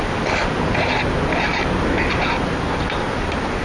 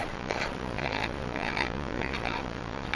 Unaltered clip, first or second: first